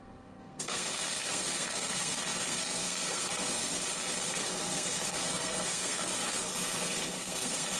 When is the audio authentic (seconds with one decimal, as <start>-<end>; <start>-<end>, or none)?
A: 3.6-4.3